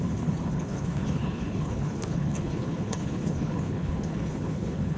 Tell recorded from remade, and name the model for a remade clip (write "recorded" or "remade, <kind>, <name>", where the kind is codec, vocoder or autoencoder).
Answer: remade, codec, HILCodec